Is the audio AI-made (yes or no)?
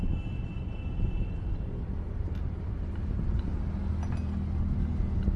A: no